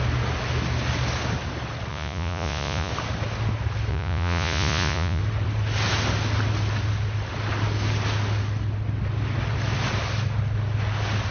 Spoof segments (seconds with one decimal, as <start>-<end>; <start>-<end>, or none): 1.9-2.9; 3.9-5.2